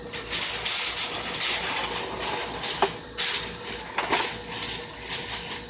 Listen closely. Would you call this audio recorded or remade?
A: recorded